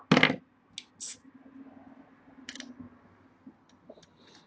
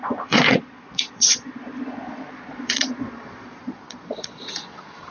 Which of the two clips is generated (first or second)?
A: second